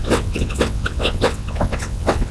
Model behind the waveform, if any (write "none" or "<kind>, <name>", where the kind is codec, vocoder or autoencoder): vocoder, WaveNeXt